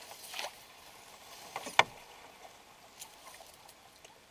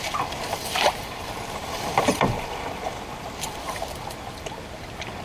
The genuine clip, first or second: first